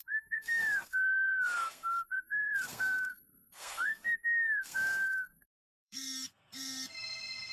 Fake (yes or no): yes